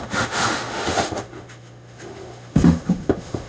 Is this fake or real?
fake